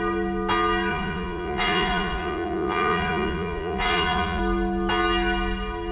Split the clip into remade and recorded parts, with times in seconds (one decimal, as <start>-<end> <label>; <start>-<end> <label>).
0.0-0.9 recorded; 0.9-4.4 remade; 4.4-5.9 recorded